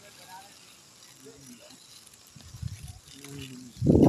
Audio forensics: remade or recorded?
recorded